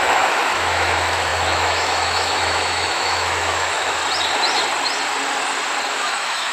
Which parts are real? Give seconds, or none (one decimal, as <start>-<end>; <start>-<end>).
4.0-5.9